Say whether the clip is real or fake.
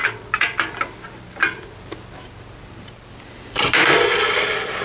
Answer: real